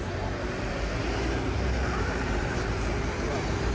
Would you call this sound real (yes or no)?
no